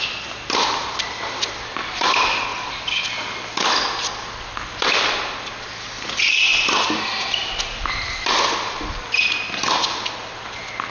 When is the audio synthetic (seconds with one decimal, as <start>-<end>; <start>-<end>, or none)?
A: none